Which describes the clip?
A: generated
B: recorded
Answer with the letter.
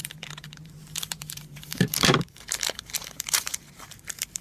A